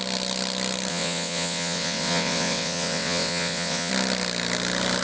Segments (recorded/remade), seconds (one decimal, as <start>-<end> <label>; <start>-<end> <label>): 0.0-0.9 recorded; 0.9-3.9 remade; 3.9-5.0 recorded